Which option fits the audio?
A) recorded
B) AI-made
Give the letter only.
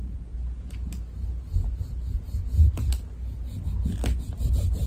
A